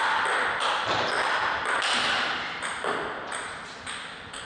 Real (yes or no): yes